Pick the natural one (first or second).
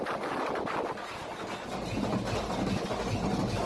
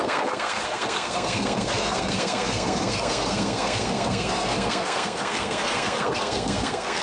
first